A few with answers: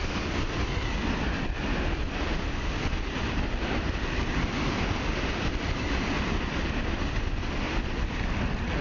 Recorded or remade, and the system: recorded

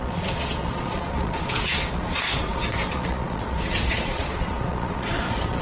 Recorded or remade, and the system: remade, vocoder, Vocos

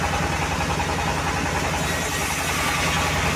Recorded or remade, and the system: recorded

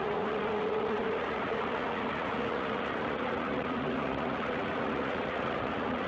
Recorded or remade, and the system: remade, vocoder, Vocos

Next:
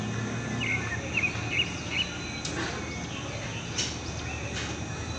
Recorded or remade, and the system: recorded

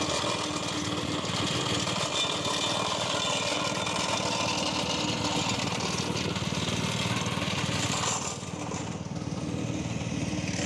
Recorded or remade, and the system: recorded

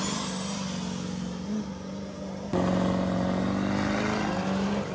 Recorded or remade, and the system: recorded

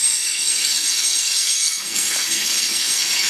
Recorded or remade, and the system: remade, codec, SNAC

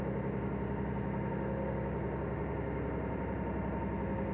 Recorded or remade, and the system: recorded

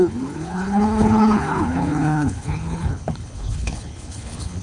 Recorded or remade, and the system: remade, codec, HILCodec